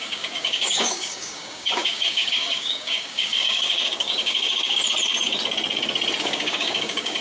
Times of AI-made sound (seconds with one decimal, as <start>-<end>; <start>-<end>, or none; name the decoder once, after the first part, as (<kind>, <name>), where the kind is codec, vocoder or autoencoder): 0.0-4.8 (codec, DAC); 6.2-7.2

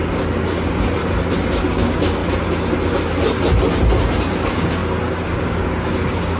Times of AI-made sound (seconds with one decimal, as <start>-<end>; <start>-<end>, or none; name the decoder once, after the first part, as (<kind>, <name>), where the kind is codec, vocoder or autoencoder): 0.0-1.0 (codec, DAC); 1.5-2.2; 4.2-6.4